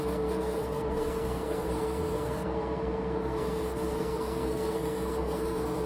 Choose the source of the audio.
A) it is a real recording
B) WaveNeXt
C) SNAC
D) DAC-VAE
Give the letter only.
C